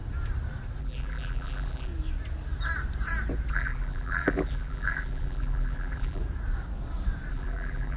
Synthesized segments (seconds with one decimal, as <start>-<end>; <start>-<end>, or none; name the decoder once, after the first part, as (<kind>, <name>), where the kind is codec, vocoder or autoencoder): 0.8-1.9 (vocoder, BigVGAN v2); 3.5-6.2; 7.3-8.0